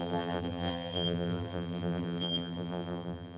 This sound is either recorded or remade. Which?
remade